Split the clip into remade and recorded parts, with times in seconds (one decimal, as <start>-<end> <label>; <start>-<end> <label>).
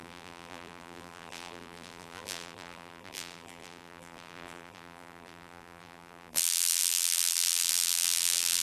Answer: 0.0-8.6 remade